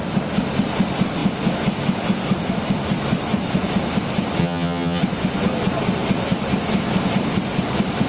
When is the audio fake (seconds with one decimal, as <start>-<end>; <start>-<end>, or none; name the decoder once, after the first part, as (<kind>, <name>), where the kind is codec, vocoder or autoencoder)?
4.4-5.0 (vocoder, HiFi-GAN)